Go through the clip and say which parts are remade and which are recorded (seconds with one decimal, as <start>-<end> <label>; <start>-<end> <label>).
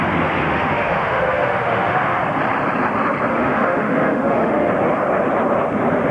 0.0-0.4 recorded; 0.4-2.2 remade; 2.2-3.3 recorded; 3.3-4.7 remade; 4.7-6.1 recorded